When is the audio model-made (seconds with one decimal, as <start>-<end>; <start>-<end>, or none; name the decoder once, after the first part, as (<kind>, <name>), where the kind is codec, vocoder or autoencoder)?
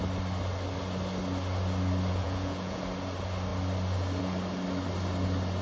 2.2-2.8 (vocoder, Vocos)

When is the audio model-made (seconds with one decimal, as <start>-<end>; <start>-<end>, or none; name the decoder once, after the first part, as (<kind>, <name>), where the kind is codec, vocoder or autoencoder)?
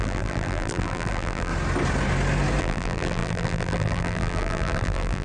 0.0-1.5 (vocoder, BigVGAN v2); 2.6-5.2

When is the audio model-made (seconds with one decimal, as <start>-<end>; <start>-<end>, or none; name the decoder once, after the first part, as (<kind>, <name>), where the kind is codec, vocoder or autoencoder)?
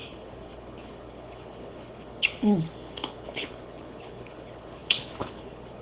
0.0-5.8 (codec, HILCodec)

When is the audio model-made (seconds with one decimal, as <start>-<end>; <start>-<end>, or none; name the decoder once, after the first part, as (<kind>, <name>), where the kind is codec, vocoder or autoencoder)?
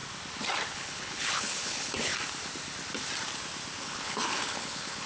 0.7-2.1 (codec, HILCodec); 3.8-5.1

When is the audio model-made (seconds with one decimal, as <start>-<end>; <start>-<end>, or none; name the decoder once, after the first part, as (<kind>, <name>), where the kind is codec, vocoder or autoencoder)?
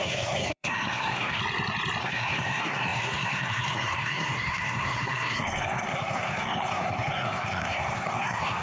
0.0-1.4 (codec, SNAC); 2.0-8.6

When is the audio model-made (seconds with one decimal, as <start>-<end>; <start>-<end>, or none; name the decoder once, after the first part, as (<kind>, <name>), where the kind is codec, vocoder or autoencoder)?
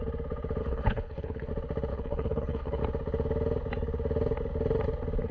0.6-1.5 (codec, HILCodec); 1.9-2.8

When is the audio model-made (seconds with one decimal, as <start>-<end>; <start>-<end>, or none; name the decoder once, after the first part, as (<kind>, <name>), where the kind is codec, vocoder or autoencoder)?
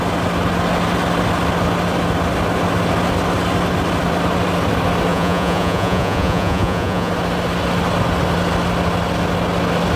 5.1-7.1 (vocoder, Vocos)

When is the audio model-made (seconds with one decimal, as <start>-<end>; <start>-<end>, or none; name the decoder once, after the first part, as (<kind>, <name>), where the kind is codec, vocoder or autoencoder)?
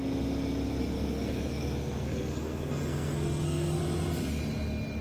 0.8-3.8 (codec, SNAC)